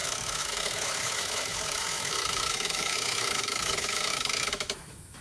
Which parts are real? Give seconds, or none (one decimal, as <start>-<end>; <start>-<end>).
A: none